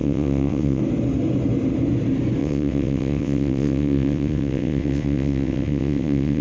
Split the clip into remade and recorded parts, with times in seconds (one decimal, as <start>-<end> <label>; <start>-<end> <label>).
0.0-0.8 remade; 0.8-2.4 recorded; 2.4-6.4 remade